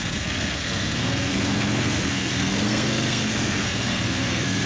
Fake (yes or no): yes